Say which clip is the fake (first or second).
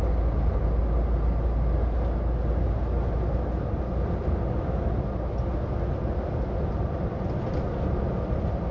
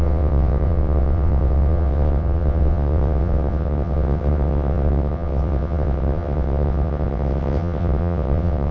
second